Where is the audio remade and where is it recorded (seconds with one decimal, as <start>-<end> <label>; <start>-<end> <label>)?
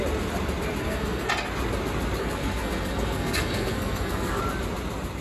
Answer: 0.0-0.8 recorded; 0.8-1.3 remade; 1.3-2.2 recorded; 2.2-4.4 remade; 4.4-5.2 recorded